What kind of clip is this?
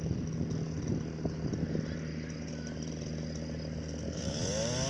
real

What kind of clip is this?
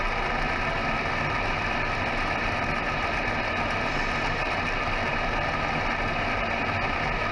real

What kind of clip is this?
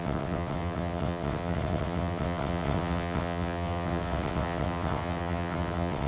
fake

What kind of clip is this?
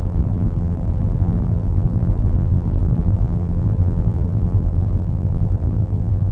fake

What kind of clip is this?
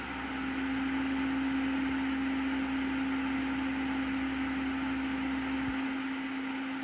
real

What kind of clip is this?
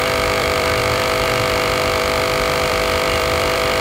fake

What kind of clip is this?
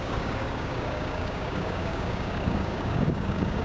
fake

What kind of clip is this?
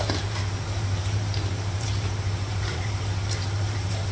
fake